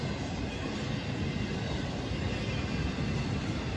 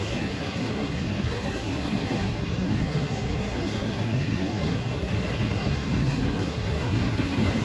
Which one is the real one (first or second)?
first